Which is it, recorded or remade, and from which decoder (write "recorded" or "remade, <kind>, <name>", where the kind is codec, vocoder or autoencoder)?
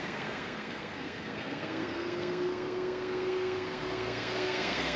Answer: remade, codec, SNAC